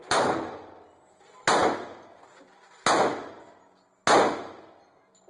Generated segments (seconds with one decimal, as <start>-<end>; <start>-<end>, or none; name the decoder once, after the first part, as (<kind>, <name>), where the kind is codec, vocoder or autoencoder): none